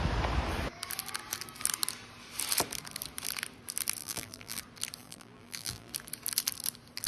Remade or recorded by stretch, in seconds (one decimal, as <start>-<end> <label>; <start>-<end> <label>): 0.0-4.0 recorded; 4.0-4.6 remade; 4.6-5.0 recorded; 5.0-5.9 remade; 5.9-7.1 recorded